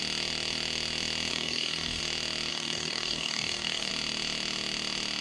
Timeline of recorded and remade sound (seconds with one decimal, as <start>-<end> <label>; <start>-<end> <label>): 0.0-1.3 recorded; 1.3-2.0 remade; 2.0-2.5 recorded; 2.5-3.9 remade; 3.9-5.2 recorded